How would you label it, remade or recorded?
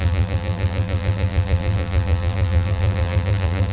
remade